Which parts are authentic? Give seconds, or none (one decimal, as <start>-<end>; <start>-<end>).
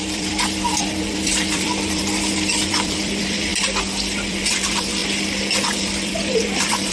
3.5-4.3; 5.0-5.6